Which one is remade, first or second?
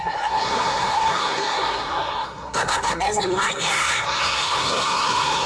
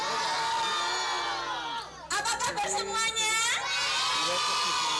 first